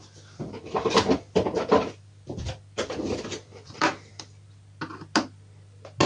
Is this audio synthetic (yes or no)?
no